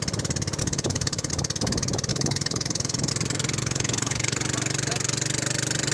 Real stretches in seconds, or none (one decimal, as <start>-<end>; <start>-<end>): 0.0-0.6; 1.3-2.1; 3.1-3.6; 4.4-5.9